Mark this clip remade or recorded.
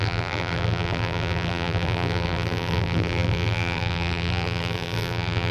remade